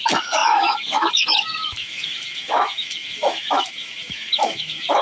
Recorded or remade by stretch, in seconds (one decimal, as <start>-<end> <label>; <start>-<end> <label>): 0.0-5.0 remade